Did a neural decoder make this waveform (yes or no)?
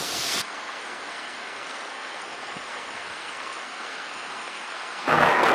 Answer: yes